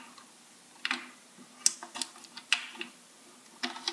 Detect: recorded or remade recorded